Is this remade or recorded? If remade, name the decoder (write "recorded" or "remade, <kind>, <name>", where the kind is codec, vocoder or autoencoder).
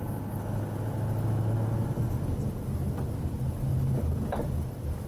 recorded